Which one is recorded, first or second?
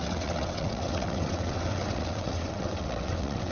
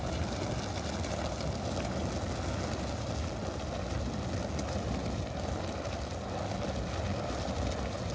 second